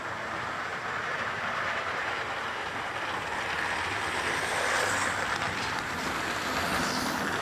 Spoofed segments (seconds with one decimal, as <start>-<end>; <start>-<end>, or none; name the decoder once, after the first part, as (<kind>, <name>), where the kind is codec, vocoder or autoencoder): none